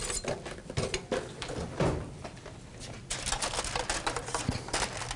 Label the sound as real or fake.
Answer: real